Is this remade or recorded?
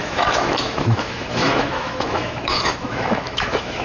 remade